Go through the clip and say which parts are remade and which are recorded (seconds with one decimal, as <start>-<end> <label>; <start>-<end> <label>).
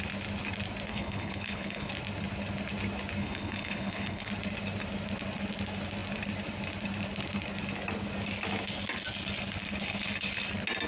0.0-0.9 recorded; 0.9-1.9 remade; 1.9-3.2 recorded; 3.2-4.3 remade; 4.3-10.9 recorded